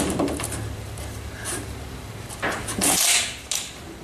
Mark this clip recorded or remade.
recorded